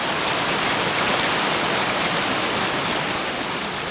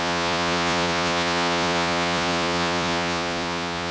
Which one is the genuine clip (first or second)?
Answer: first